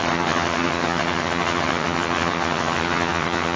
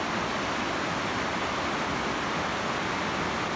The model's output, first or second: first